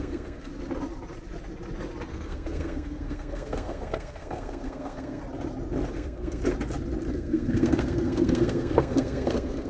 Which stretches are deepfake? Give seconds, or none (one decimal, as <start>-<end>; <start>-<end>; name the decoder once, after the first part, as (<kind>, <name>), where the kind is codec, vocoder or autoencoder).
0.0-0.5 (codec, SNAC); 2.1-5.2; 5.9-6.4; 7.1-9.7